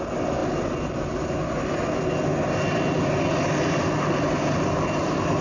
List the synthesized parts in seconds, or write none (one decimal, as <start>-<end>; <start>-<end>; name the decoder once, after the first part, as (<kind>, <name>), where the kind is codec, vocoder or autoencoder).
none